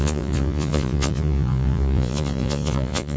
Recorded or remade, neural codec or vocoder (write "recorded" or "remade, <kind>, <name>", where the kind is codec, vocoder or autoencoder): remade, vocoder, Vocos